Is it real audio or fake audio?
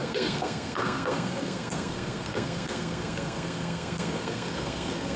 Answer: fake